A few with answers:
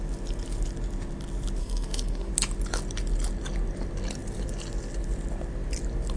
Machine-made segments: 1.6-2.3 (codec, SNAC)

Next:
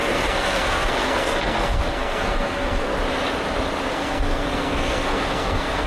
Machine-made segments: 0.0-2.9 (codec, SNAC); 3.9-5.9

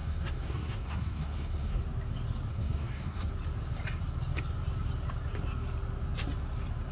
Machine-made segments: 0.0-1.8 (codec, SNAC); 2.5-3.3

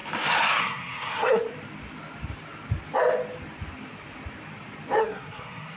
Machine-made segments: 0.6-1.5 (codec, SNAC); 5.0-5.8